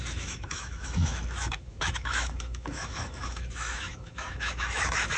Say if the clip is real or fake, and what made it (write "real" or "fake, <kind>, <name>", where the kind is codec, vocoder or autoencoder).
fake, autoencoder, DAC-VAE